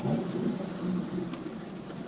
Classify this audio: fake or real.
fake